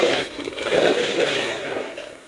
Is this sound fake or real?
fake